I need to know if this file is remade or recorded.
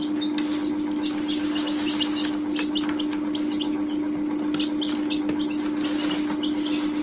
recorded